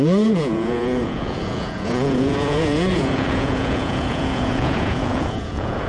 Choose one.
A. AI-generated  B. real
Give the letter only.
A